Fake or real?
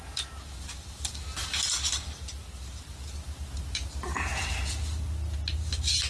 real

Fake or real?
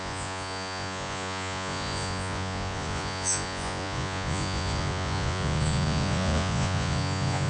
fake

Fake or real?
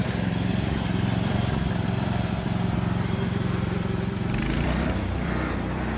fake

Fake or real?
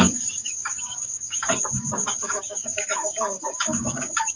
fake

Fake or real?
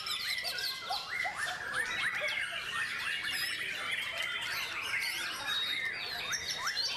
fake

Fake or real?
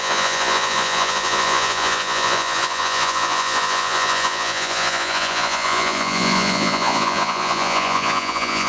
fake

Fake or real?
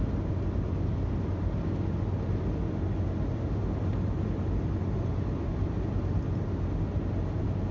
real